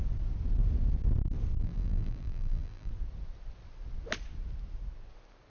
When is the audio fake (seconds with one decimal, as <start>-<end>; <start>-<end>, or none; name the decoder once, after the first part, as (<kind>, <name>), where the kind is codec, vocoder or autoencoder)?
1.6-2.9 (vocoder, BigVGAN v2)